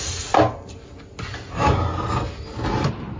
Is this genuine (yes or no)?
yes